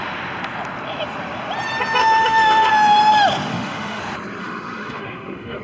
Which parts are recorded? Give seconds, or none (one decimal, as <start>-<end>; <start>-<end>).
0.0-2.0; 2.7-3.5; 4.0-4.4